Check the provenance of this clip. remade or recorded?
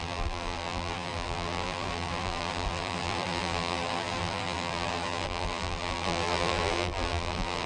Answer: remade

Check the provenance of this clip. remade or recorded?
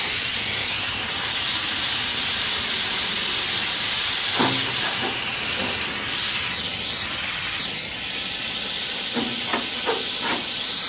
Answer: remade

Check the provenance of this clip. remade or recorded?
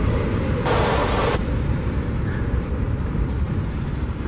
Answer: remade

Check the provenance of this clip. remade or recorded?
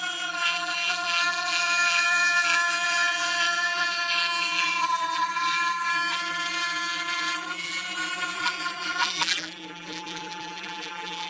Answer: remade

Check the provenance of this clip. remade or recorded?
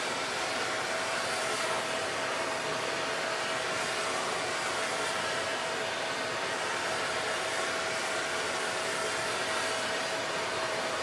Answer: remade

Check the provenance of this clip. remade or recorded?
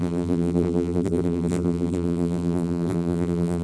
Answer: remade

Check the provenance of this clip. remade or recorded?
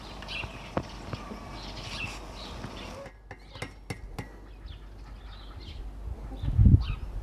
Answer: recorded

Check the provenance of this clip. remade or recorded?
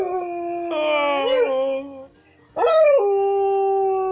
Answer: recorded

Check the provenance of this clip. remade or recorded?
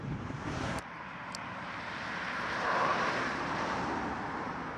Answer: remade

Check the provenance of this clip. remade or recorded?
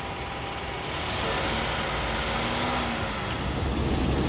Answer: recorded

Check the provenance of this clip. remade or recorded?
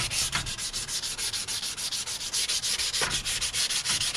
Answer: recorded